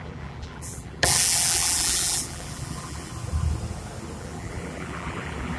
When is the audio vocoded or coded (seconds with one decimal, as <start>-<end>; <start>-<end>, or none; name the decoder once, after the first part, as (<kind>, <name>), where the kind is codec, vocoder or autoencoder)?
0.0-3.1 (vocoder, BigVGAN v2); 4.2-5.6